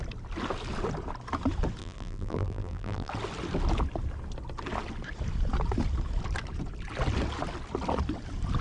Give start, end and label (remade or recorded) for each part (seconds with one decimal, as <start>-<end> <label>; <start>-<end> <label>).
0.0-1.8 recorded; 1.8-3.1 remade; 3.1-8.6 recorded